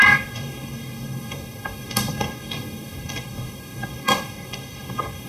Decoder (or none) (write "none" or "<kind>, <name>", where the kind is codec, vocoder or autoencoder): codec, DAC